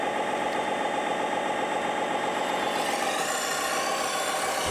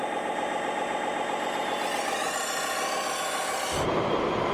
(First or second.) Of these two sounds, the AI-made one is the first